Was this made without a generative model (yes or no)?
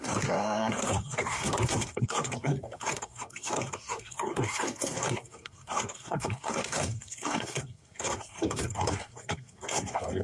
no